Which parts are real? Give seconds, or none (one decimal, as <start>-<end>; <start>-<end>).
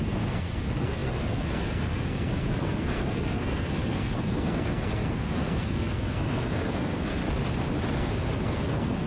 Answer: 7.2-7.9